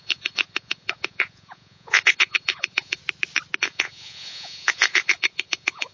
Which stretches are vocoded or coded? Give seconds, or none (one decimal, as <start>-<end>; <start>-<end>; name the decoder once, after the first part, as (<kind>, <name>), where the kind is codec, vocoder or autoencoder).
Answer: 0.0-3.0 (vocoder, Vocos); 3.6-5.9